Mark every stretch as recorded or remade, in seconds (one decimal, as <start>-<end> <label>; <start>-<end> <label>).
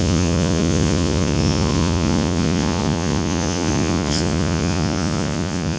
0.0-5.8 remade